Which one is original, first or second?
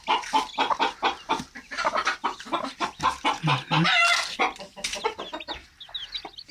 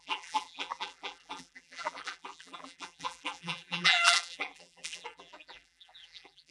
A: first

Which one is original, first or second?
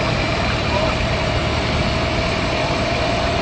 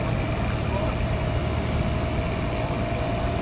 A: second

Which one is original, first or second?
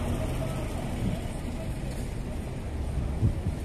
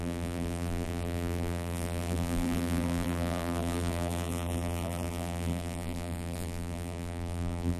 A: first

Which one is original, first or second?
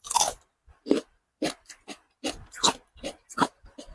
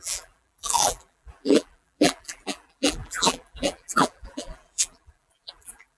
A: first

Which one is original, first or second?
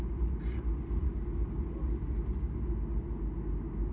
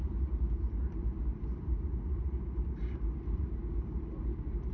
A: first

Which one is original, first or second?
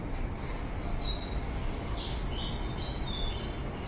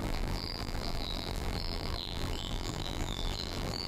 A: first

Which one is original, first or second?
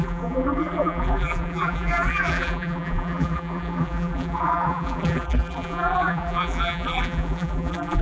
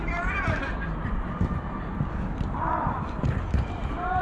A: second